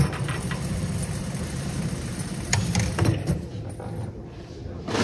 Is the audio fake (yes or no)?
yes